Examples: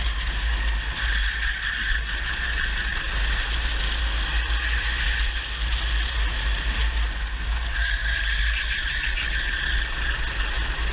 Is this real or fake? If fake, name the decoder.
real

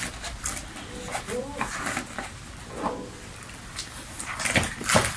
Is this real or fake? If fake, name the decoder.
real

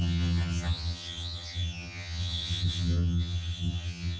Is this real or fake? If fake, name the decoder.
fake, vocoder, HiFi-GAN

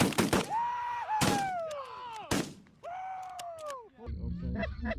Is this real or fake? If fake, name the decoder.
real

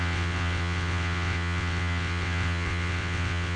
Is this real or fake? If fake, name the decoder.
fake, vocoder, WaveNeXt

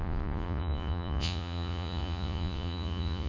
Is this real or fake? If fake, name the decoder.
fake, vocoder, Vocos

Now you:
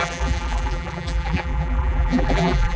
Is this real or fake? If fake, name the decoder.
fake, vocoder, BigVGAN v2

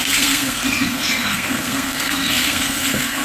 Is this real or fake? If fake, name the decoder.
fake, codec, SNAC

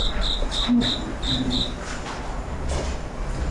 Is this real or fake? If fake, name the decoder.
real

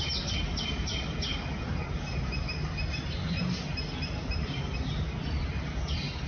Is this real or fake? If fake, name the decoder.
real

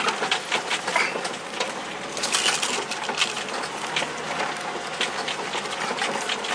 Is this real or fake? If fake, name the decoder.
real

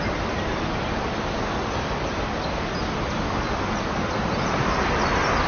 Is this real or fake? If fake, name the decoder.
real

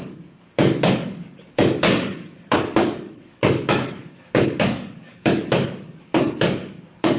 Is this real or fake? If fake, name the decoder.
fake, codec, DAC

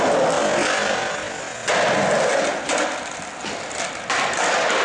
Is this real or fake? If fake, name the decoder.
real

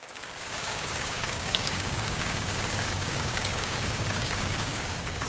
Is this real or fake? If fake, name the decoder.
fake, codec, DAC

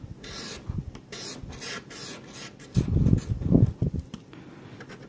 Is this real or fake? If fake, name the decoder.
real